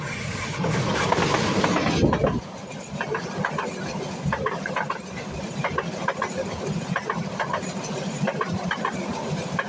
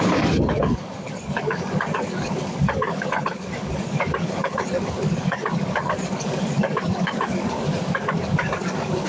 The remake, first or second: second